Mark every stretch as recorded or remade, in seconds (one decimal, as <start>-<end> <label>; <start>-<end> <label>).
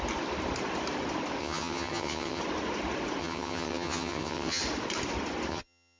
0.0-1.4 recorded; 1.4-2.4 remade; 2.4-3.2 recorded; 3.2-4.6 remade; 4.6-5.5 recorded; 5.5-6.0 remade